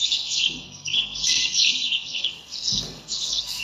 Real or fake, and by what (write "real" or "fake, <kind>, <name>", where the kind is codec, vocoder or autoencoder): fake, codec, SNAC